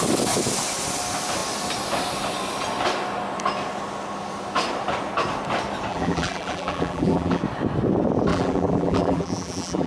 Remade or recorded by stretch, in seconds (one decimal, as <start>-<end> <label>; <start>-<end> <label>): 0.0-5.9 recorded; 5.9-7.4 remade; 7.4-8.3 recorded; 8.3-9.9 remade

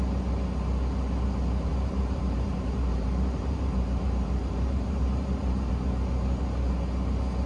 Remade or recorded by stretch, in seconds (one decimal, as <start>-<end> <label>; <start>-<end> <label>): 0.0-1.7 recorded; 1.7-5.7 remade; 5.7-7.5 recorded

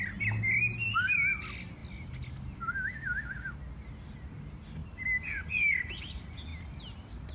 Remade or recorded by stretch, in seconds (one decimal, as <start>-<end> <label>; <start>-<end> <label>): 0.0-1.8 recorded; 1.8-2.6 remade; 2.6-4.8 recorded; 4.8-6.0 remade; 6.0-7.3 recorded

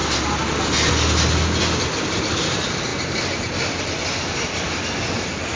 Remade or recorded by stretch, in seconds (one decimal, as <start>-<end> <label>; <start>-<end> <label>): 0.0-5.6 recorded